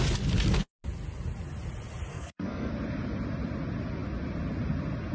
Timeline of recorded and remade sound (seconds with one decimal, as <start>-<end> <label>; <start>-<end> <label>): 0.0-2.1 recorded; 2.1-2.7 remade; 2.7-5.1 recorded